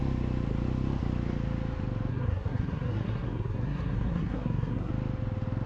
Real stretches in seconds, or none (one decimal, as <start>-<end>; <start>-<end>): 0.0-2.1; 4.9-5.7